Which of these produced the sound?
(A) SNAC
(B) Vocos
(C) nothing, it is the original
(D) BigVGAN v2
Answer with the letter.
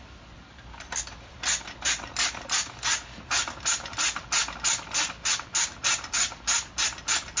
C